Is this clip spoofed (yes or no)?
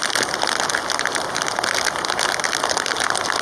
no